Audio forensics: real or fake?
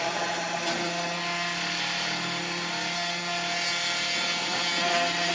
real